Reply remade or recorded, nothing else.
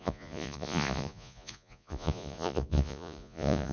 remade